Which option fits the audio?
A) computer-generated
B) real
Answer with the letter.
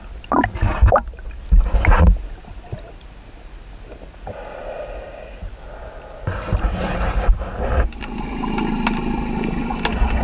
B